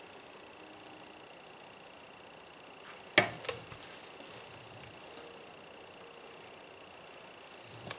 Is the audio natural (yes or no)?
yes